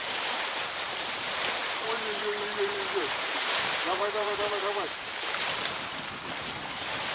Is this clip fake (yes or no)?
yes